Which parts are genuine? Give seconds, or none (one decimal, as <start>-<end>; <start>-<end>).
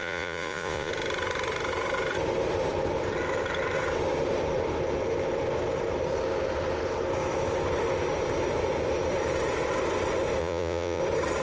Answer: 0.9-10.4; 11.0-11.4